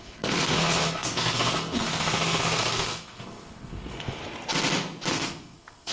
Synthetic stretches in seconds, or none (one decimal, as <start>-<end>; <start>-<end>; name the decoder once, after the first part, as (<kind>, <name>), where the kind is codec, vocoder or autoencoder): 0.0-4.2 (codec, SNAC); 5.1-5.9